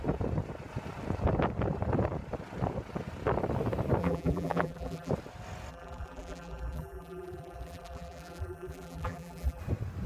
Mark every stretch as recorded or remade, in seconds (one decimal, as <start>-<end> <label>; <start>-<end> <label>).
0.0-4.0 recorded; 4.0-5.1 remade; 5.1-5.7 recorded; 5.7-9.6 remade; 9.6-10.1 recorded